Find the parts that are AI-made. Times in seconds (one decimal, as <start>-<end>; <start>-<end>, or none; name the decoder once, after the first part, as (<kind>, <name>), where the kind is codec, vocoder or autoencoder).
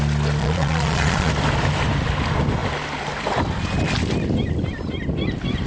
0.4-1.3 (vocoder, Vocos)